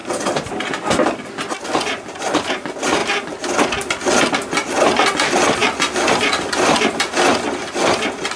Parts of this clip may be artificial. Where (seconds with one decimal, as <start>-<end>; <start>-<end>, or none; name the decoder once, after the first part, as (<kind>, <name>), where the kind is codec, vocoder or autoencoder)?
none